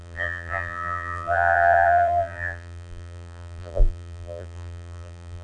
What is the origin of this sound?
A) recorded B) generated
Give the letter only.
B